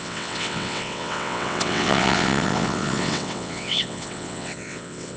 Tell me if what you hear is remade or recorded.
remade